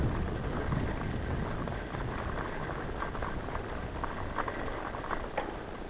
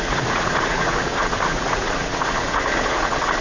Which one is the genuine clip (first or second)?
first